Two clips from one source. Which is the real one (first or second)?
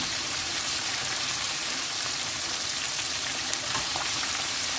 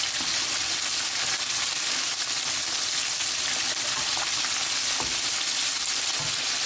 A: second